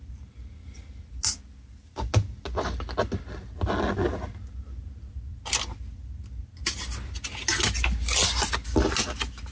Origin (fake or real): real